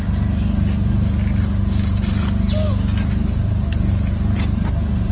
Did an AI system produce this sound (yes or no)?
yes